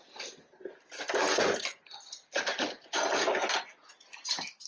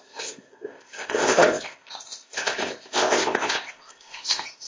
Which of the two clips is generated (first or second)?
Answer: second